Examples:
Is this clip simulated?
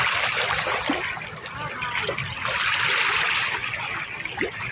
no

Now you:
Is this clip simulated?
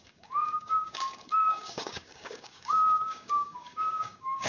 yes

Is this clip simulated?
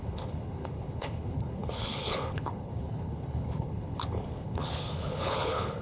yes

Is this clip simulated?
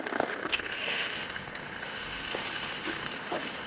yes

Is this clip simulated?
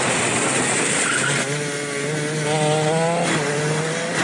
no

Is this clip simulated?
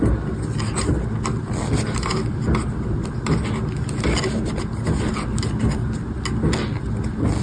no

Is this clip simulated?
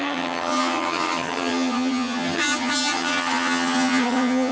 yes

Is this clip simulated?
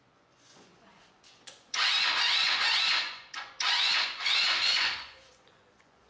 yes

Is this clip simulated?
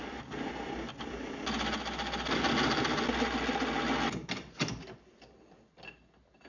no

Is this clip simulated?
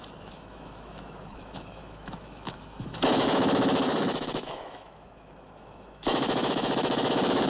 yes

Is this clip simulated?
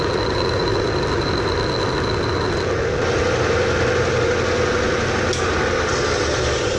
no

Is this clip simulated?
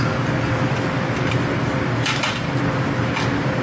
no